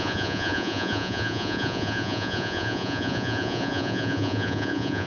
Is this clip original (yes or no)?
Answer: no